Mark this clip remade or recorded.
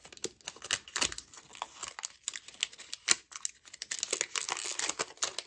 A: recorded